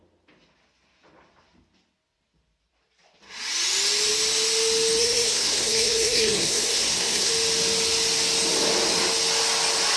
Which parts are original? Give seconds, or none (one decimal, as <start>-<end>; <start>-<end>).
0.0-5.0; 7.3-10.0